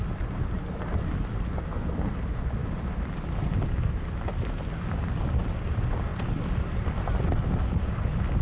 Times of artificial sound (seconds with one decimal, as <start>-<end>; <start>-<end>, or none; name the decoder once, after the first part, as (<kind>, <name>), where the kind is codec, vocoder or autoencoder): none